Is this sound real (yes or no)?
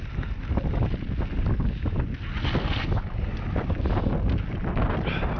yes